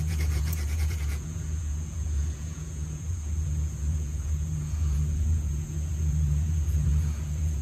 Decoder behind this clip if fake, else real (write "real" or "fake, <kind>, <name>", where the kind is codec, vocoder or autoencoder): fake, vocoder, Vocos